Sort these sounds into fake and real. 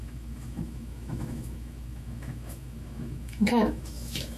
fake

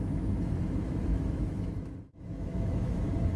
fake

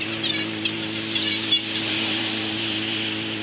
real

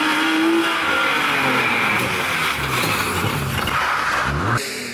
real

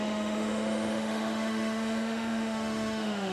fake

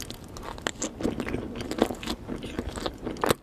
real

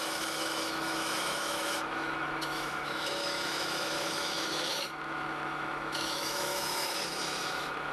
fake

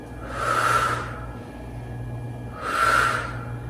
real